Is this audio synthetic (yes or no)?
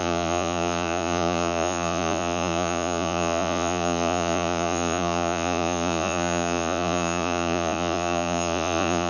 yes